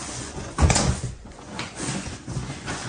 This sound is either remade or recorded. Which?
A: remade